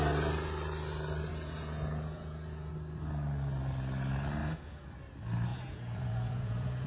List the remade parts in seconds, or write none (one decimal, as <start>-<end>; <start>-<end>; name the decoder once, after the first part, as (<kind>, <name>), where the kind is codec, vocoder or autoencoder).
1.3-2.7 (vocoder, Vocos); 4.4-4.9; 5.5-6.9